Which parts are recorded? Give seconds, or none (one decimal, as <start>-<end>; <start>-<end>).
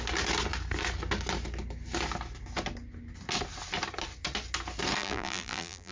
0.0-5.0